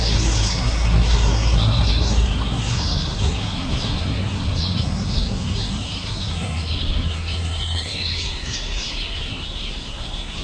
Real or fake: fake